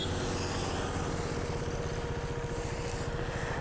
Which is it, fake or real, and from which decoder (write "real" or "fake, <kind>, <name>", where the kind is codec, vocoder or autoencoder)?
real